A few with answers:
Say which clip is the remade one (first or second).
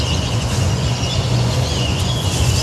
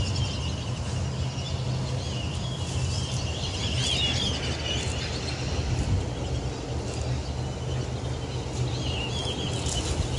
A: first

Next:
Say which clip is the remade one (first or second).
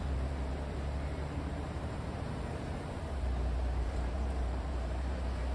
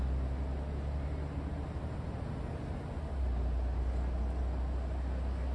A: first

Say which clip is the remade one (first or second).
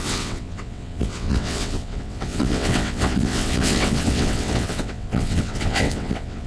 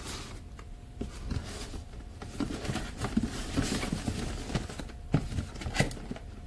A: first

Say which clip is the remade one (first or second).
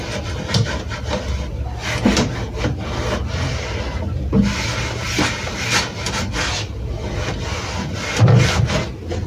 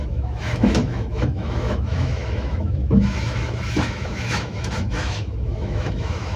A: second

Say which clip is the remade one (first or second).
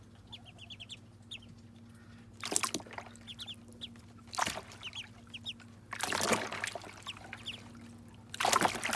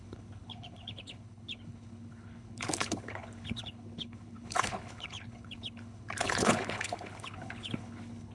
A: second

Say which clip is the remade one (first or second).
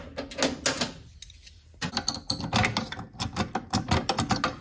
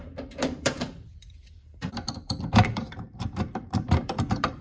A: second